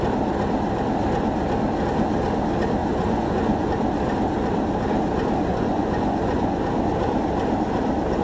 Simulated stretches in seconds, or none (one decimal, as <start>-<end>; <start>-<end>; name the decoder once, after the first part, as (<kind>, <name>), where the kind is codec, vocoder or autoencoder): 2.8-3.7 (vocoder, Vocos); 5.5-6.6